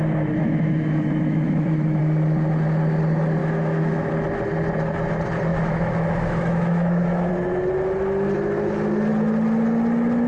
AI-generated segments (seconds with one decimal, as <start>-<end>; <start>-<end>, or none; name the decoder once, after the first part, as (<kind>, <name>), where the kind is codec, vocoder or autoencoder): 0.4-2.0 (autoencoder, DAC-VAE); 3.4-4.1; 5.5-7.3